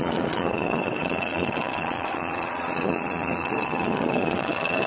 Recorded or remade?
remade